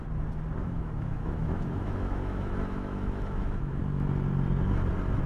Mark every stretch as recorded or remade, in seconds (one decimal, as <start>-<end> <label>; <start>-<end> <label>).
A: 0.0-0.6 recorded; 0.6-3.8 remade; 3.8-5.3 recorded